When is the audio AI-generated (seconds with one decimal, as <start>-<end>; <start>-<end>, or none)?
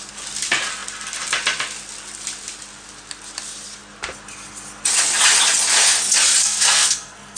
6.4-7.4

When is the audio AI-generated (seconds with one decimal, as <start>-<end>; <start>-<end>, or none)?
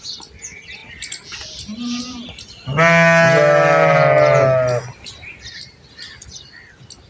none